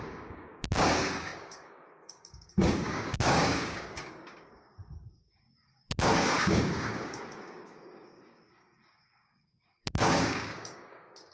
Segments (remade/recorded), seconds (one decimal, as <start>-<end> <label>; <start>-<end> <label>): 0.0-11.3 remade